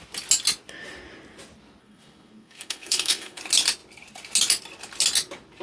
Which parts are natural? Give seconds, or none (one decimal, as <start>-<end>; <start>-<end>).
0.0-1.8; 3.4-5.6